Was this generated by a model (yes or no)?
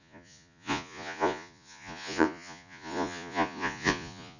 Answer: yes